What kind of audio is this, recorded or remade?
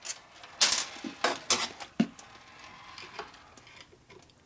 recorded